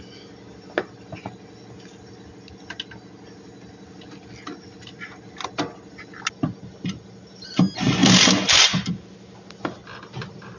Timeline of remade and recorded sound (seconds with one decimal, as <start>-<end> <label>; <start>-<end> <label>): 0.0-10.6 recorded